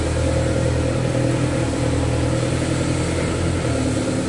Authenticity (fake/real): real